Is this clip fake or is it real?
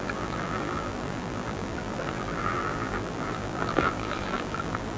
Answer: fake